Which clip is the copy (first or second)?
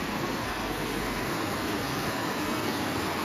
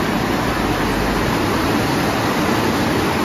first